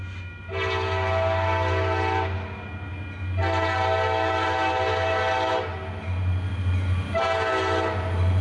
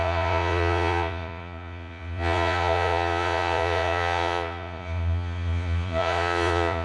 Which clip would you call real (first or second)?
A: first